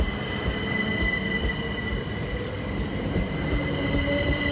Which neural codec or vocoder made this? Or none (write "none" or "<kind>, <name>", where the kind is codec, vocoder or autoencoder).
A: none